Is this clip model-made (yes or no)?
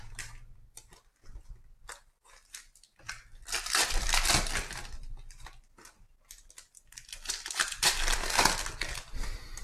yes